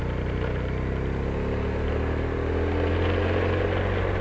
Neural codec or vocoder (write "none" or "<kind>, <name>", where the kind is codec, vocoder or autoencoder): none